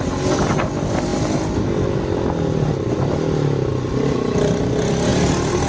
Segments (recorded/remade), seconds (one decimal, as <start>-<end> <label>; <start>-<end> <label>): 0.0-5.7 recorded